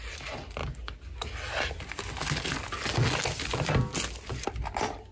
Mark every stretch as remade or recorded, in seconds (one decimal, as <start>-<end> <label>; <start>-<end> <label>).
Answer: 0.0-5.1 recorded